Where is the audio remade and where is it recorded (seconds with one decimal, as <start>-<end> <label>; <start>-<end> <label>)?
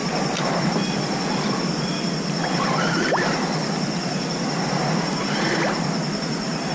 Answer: 0.0-0.6 recorded; 0.6-6.7 remade